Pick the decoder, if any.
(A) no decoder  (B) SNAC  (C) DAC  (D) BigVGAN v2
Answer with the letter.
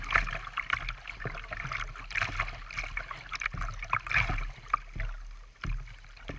A